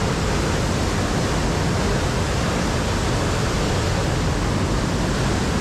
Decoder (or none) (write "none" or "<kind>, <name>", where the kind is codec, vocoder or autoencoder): none